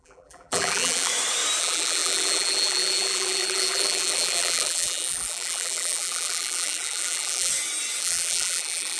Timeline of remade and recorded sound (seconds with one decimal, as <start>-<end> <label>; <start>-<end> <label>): 0.0-1.1 remade; 1.1-1.6 recorded; 1.6-7.5 remade; 7.5-8.0 recorded; 8.0-9.0 remade